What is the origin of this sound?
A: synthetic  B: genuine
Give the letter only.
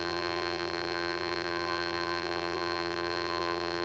A